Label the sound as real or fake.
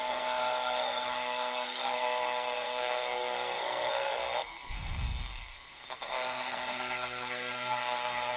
fake